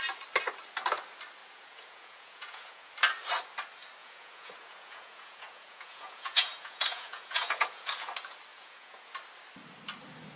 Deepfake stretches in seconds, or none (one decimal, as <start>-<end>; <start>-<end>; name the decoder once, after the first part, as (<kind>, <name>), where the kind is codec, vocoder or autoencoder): 1.4-2.9 (vocoder, Vocos); 4.0-8.1; 8.5-9.1